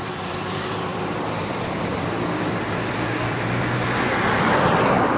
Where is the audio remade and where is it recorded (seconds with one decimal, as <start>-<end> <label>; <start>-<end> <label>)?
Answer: 0.0-5.2 remade